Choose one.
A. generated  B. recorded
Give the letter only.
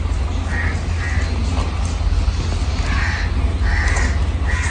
B